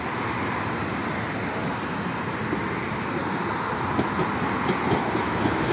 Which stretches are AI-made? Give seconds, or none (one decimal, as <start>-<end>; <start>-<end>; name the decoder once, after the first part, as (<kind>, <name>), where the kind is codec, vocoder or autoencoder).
none